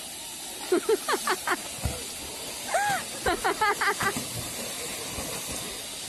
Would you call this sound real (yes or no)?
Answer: yes